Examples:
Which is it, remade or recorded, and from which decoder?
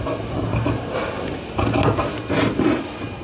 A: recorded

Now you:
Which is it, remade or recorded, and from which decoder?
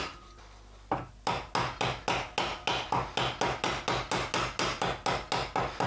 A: recorded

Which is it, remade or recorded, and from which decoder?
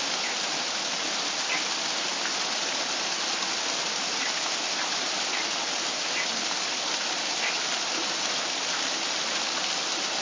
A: recorded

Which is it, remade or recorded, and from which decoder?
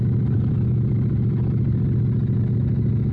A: recorded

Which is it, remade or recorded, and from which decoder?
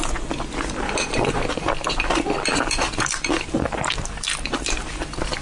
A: recorded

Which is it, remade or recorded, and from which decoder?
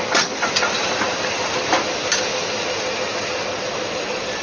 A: recorded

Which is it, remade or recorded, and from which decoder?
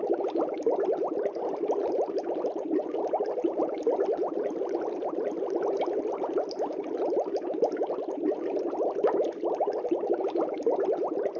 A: remade, vocoder, BigVGAN v2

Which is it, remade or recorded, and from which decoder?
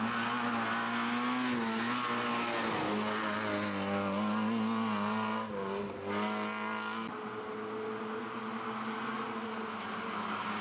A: recorded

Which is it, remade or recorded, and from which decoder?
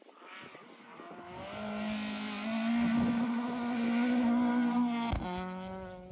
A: recorded